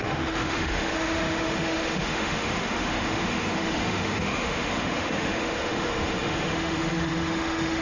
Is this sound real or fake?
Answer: fake